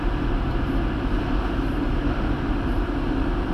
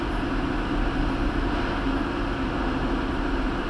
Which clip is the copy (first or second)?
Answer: first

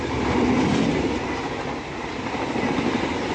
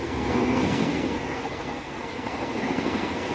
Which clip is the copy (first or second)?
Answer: second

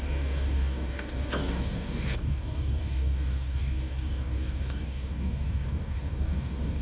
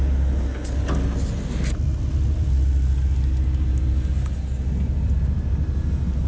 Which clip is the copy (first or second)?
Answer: first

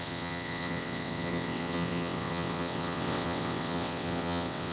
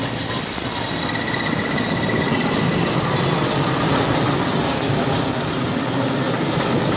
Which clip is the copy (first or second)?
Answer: first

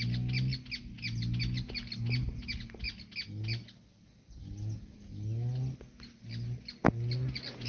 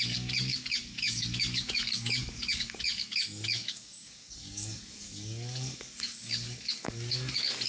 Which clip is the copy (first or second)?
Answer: second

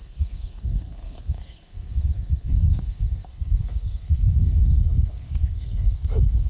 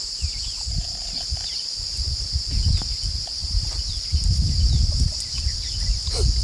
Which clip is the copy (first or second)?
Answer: first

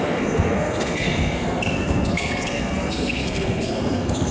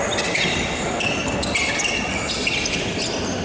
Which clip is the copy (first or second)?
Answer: first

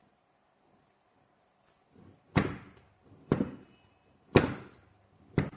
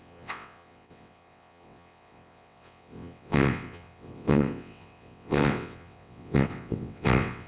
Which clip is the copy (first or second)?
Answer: second